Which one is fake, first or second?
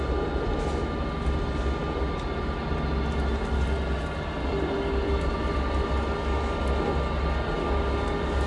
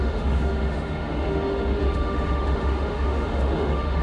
second